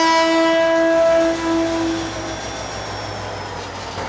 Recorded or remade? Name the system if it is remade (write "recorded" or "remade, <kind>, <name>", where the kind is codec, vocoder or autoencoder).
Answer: recorded